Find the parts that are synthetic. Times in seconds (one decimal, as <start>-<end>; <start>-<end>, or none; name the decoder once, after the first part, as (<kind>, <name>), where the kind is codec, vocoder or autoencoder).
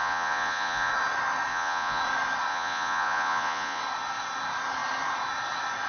0.0-0.9 (vocoder, Vocos); 1.5-2.0; 2.5-3.8